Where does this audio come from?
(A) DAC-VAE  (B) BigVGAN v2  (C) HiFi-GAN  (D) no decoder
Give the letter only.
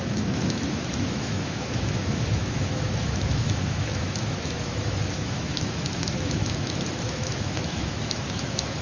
A